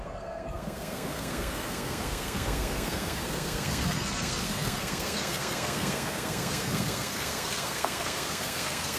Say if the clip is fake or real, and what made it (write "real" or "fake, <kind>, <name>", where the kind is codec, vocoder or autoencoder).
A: fake, codec, SNAC